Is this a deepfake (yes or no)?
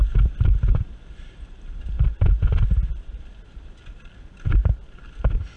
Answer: no